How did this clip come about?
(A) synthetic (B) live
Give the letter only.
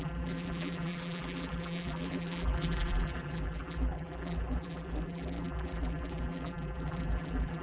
A